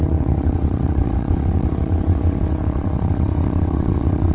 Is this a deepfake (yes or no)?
yes